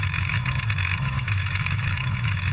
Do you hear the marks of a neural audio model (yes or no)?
yes